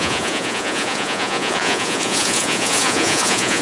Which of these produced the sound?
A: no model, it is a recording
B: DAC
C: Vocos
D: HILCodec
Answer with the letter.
C